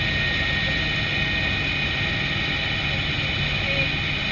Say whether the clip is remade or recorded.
recorded